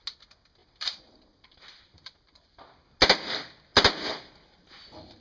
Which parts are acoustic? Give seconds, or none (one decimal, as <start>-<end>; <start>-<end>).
0.0-0.6; 2.6-5.2